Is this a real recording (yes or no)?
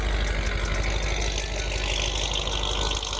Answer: yes